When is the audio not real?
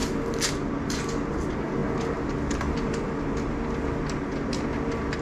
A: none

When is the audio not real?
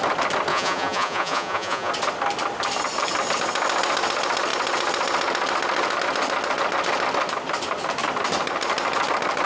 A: 0.5-1.9 (vocoder, Vocos)